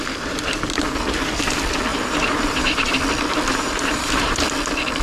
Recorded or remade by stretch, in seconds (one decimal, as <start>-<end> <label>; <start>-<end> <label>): 0.0-1.9 recorded; 1.9-3.0 remade; 3.0-3.5 recorded; 3.5-4.4 remade; 4.4-5.0 recorded